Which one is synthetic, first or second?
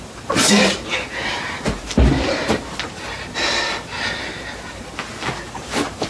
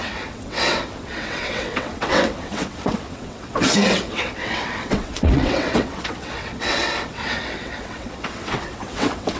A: second